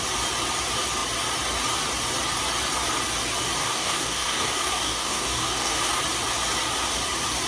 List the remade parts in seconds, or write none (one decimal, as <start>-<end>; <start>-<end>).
3.6-6.0